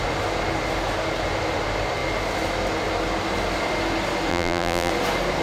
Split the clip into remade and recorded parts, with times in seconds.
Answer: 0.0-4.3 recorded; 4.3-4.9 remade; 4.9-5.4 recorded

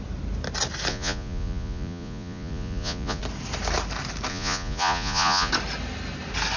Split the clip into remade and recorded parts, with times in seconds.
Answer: 0.0-0.9 recorded; 0.9-3.2 remade; 3.2-4.3 recorded; 4.3-5.5 remade; 5.5-6.6 recorded

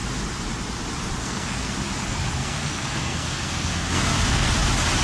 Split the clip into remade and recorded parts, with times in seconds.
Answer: 0.0-1.2 recorded; 1.2-1.7 remade; 1.7-2.4 recorded; 2.4-4.5 remade; 4.5-5.0 recorded

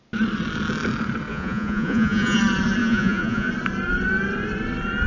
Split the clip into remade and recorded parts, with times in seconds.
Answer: 0.0-1.3 recorded; 1.3-2.4 remade; 2.4-2.8 recorded; 2.8-3.5 remade; 3.5-5.1 recorded

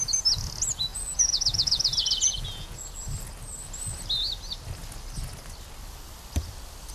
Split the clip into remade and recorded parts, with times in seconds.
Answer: 0.0-0.9 recorded; 0.9-2.8 remade; 2.8-6.9 recorded

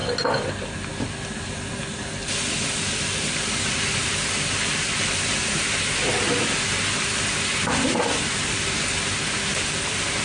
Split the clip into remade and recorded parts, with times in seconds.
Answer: 0.0-10.2 recorded

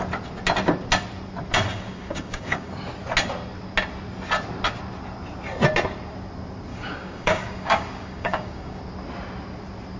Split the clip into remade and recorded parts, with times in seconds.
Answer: 0.0-1.7 recorded; 1.7-2.7 remade; 2.7-6.7 recorded; 6.7-8.8 remade; 8.8-10.0 recorded

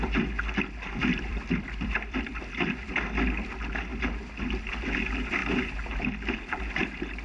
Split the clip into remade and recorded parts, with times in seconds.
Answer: 0.0-1.3 recorded; 1.3-2.4 remade; 2.4-7.2 recorded